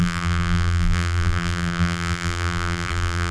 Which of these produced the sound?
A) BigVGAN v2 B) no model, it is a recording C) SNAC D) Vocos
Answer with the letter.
A